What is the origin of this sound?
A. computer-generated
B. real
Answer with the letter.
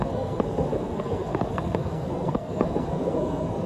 A